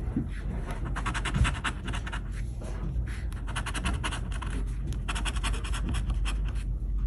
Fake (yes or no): no